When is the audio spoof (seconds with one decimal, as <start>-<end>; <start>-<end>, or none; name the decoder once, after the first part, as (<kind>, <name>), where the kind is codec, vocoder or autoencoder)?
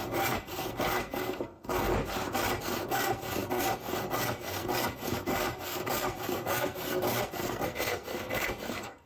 0.0-1.9 (codec, SNAC); 2.6-9.1